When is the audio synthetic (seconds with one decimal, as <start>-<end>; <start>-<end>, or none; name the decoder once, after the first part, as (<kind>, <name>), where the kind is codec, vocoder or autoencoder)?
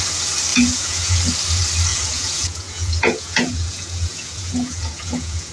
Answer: 0.5-1.2 (vocoder, Vocos); 1.9-5.5